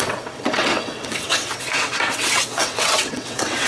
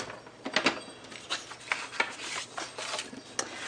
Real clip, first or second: second